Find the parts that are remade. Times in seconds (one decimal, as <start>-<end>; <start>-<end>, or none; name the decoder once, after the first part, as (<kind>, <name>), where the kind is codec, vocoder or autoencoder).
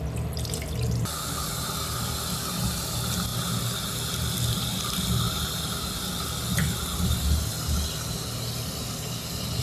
none